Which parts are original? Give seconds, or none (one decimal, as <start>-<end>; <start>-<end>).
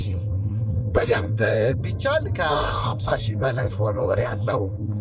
1.8-2.5